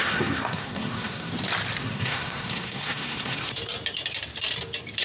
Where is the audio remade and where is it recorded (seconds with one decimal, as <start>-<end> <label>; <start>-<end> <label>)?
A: 0.0-1.3 remade; 1.3-1.8 recorded; 1.8-3.5 remade; 3.5-5.0 recorded

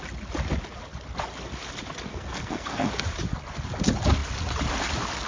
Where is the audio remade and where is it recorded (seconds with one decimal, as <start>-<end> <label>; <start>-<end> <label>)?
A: 0.0-2.1 recorded; 2.1-2.9 remade; 2.9-5.3 recorded

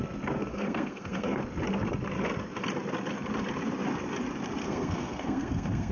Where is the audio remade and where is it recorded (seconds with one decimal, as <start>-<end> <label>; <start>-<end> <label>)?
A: 0.0-0.5 recorded; 0.5-1.4 remade; 1.4-4.6 recorded; 4.6-5.9 remade

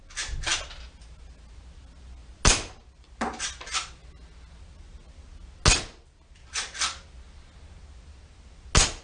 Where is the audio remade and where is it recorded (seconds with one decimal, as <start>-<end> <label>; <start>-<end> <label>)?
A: 0.0-9.0 recorded